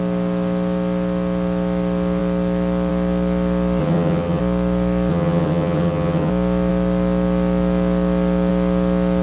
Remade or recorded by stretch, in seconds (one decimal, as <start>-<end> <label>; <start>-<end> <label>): 0.0-3.8 recorded; 3.8-4.4 remade; 4.4-5.1 recorded; 5.1-6.3 remade; 6.3-9.2 recorded